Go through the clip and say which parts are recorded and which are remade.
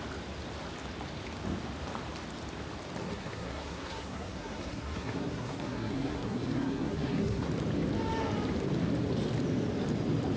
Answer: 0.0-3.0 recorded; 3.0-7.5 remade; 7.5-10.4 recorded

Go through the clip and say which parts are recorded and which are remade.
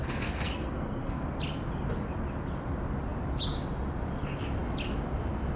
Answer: 0.0-1.2 remade; 1.2-5.6 recorded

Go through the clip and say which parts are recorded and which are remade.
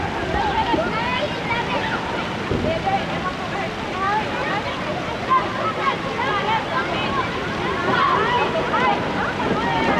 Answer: 0.0-10.0 recorded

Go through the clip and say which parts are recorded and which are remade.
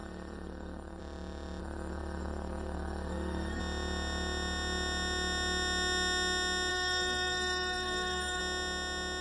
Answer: 0.0-1.0 remade; 1.0-1.6 recorded; 1.6-3.6 remade; 3.6-6.7 recorded; 6.7-8.4 remade; 8.4-9.2 recorded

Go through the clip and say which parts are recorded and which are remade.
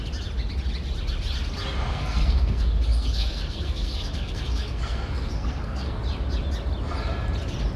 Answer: 0.0-1.9 recorded; 1.9-6.0 remade; 6.0-7.8 recorded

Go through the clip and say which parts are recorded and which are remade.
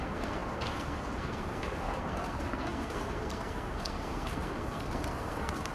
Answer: 0.0-5.7 remade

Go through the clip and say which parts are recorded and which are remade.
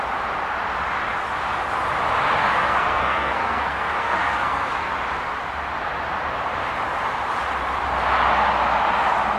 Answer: 0.0-2.4 recorded; 2.4-4.9 remade; 4.9-9.4 recorded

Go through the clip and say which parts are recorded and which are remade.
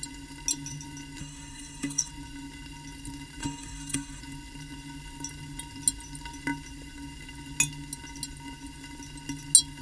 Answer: 0.0-1.2 recorded; 1.2-2.1 remade; 2.1-3.4 recorded; 3.4-4.2 remade; 4.2-9.8 recorded